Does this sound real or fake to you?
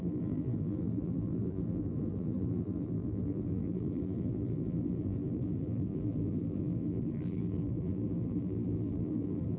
fake